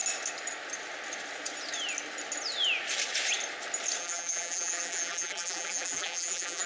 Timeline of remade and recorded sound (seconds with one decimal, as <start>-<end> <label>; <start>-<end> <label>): 0.0-4.0 recorded; 4.0-6.7 remade